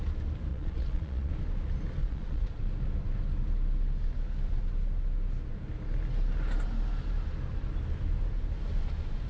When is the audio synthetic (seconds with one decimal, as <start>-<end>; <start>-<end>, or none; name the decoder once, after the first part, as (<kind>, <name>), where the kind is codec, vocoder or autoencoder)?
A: 0.5-1.3 (vocoder, Vocos); 2.0-2.7